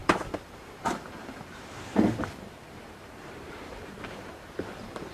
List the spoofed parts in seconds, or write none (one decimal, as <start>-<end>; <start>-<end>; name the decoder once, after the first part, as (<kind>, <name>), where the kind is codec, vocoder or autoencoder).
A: 0.0-5.1 (vocoder, BigVGAN v2)